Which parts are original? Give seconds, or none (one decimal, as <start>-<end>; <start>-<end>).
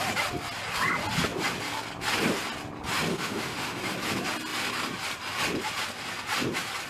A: 0.0-3.1; 3.8-6.9